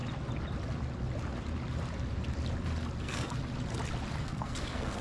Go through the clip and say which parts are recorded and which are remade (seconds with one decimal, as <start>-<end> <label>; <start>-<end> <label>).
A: 0.0-3.0 recorded; 3.0-3.4 remade; 3.4-4.2 recorded; 4.2-5.0 remade